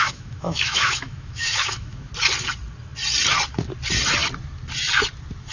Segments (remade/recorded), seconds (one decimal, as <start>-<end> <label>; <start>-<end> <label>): 0.0-2.1 remade; 2.1-5.5 recorded